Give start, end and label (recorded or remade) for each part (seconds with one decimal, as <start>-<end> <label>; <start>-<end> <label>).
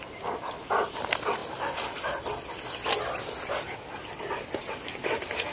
0.0-5.5 recorded